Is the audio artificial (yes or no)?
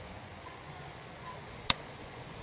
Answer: yes